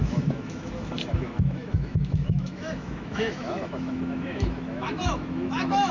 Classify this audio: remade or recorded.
remade